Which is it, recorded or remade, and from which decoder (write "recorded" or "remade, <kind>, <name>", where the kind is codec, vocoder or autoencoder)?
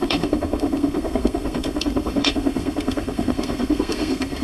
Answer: remade, codec, SNAC